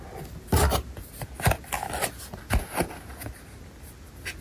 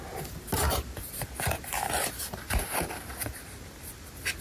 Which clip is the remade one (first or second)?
second